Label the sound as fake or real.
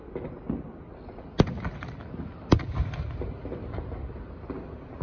real